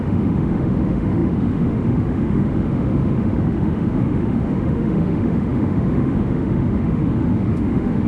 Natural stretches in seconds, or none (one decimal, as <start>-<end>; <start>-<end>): none